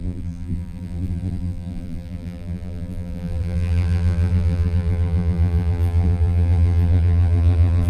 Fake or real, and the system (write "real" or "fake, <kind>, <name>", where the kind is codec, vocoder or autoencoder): fake, vocoder, BigVGAN v2